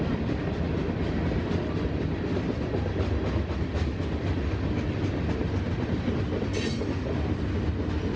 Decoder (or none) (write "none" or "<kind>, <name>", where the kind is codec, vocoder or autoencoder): none